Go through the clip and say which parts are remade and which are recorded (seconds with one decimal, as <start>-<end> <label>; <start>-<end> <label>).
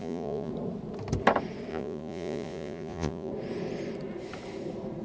0.0-0.5 remade; 0.5-1.7 recorded; 1.7-3.3 remade; 3.3-5.0 recorded